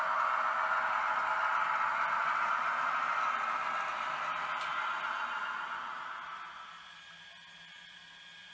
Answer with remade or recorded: recorded